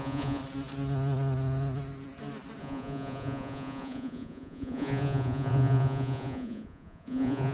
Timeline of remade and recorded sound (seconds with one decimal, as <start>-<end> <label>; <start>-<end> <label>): 0.0-0.4 remade; 0.4-2.6 recorded; 2.6-7.5 remade